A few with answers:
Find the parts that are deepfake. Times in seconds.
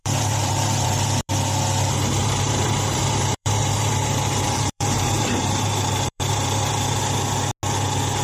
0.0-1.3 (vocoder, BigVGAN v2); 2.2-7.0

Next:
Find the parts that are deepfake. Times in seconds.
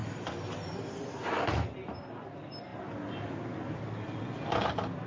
0.0-2.2 (vocoder, BigVGAN v2)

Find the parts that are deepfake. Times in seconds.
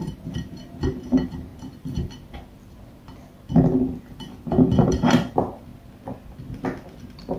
0.0-1.5 (vocoder, BigVGAN v2); 4.9-5.7; 7.0-7.4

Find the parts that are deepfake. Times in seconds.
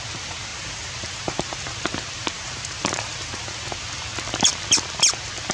0.5-3.6 (vocoder, BigVGAN v2)